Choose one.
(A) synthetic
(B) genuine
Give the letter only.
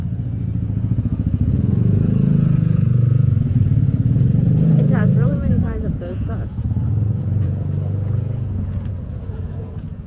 A